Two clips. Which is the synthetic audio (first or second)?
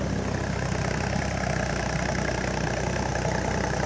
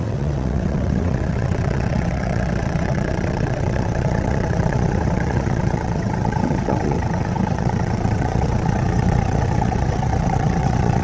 second